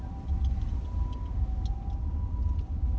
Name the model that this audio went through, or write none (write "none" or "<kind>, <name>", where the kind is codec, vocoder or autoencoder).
none